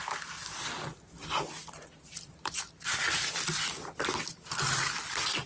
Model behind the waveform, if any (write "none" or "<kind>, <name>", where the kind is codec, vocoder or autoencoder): none